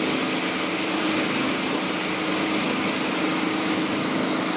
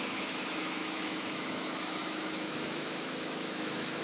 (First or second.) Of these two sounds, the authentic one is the first